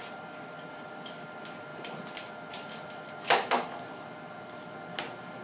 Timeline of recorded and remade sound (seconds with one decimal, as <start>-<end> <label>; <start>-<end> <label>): 0.0-1.7 recorded; 1.7-2.9 remade; 2.9-5.4 recorded